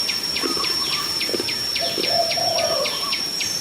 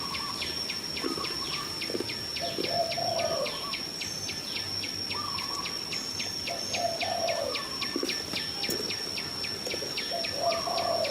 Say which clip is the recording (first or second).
second